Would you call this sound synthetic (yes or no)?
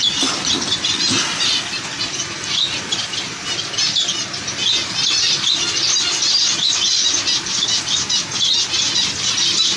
no